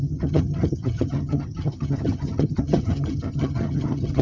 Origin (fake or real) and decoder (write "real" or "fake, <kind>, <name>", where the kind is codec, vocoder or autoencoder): fake, vocoder, HiFi-GAN